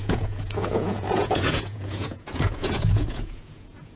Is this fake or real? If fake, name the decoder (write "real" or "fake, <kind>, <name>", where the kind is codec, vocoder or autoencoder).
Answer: fake, vocoder, Vocos